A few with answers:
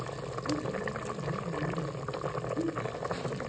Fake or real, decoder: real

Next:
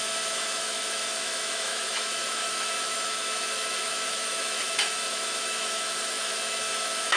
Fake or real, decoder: fake, autoencoder, DAC-VAE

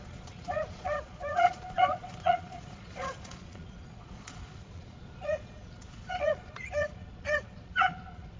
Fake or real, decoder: fake, vocoder, Vocos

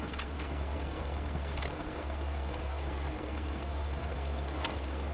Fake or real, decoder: fake, codec, SNAC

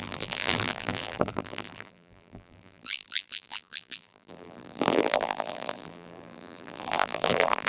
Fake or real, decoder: fake, vocoder, BigVGAN v2